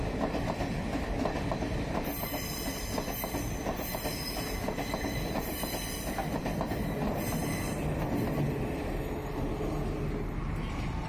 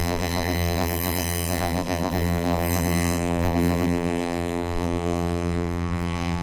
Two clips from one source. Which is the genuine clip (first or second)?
first